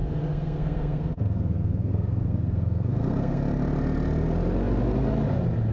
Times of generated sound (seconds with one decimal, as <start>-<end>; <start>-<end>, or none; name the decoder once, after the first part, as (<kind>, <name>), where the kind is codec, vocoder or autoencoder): 0.0-3.4 (codec, SNAC)